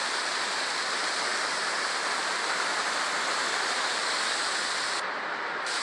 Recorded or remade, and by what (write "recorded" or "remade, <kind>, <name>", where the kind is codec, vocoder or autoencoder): recorded